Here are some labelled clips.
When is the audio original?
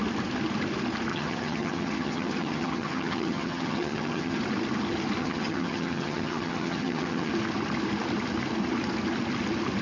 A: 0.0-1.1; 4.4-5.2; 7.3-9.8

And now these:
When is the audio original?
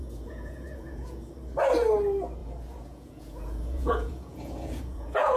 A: 1.3-2.4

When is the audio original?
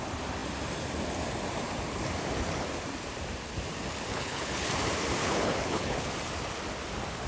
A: 0.0-4.1; 4.7-5.2; 6.0-7.3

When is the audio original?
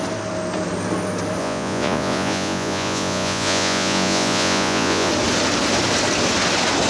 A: 0.0-1.4; 5.1-6.9